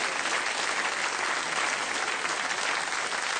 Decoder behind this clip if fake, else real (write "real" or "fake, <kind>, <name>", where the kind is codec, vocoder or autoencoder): real